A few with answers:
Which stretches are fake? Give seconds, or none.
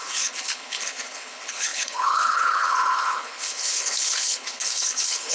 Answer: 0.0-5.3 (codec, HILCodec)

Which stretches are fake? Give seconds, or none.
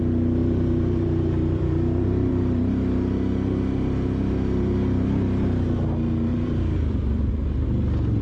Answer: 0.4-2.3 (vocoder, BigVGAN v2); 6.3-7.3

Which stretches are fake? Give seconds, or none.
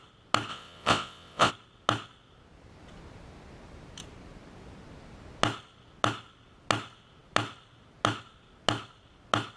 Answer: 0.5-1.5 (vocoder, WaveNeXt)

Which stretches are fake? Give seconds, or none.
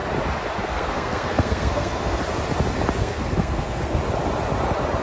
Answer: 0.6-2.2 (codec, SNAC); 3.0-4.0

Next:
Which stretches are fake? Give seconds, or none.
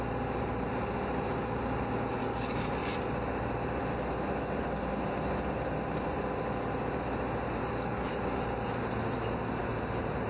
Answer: 2.2-2.8 (codec, DAC); 7.6-8.1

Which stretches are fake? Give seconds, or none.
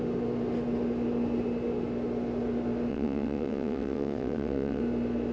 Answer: 2.9-4.8 (vocoder, WaveNeXt)